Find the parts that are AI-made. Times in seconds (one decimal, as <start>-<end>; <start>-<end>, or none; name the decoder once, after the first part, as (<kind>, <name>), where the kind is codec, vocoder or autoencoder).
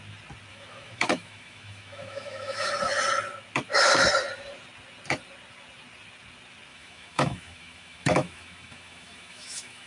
0.5-2.7 (autoencoder, DAC-VAE); 6.7-9.9